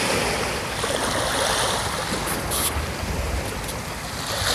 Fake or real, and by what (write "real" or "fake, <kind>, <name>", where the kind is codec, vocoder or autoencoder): fake, vocoder, BigVGAN v2